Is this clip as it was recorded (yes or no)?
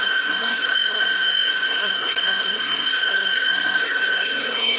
no